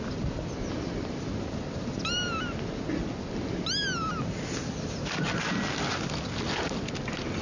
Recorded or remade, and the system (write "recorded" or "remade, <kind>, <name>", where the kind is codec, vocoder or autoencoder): recorded